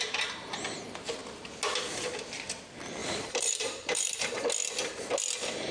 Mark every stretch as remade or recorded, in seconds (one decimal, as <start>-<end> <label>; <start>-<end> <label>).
0.0-3.0 recorded; 3.0-4.5 remade; 4.5-5.7 recorded